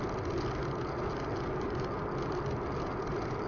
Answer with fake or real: real